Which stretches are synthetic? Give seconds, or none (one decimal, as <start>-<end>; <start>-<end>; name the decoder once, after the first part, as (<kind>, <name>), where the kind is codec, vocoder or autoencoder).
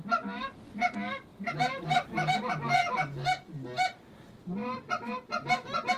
none